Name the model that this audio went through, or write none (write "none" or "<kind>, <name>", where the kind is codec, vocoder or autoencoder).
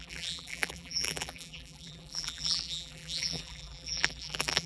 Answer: vocoder, BigVGAN v2